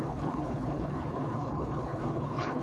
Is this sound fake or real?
fake